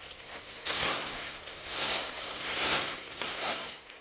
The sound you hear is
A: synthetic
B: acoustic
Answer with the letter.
A